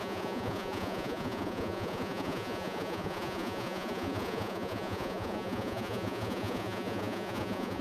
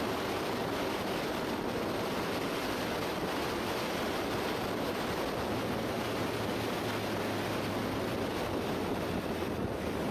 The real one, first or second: second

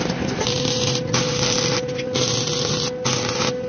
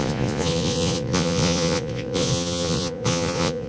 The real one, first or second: first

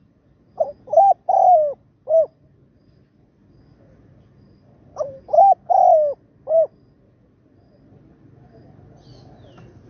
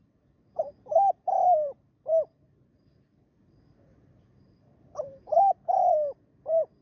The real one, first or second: first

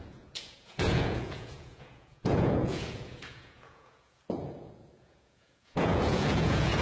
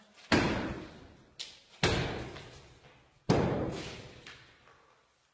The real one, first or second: second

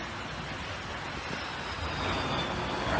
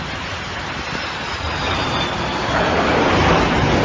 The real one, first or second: first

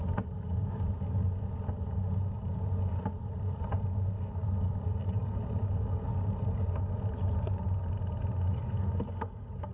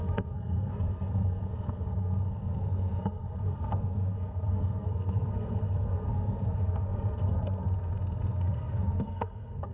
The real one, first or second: first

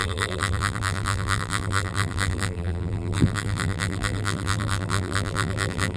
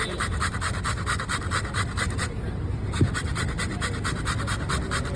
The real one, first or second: second